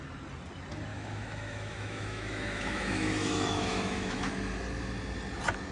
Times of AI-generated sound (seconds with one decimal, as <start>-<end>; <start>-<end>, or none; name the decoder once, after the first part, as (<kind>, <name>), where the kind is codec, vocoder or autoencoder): 0.9-4.3 (autoencoder, DAC-VAE)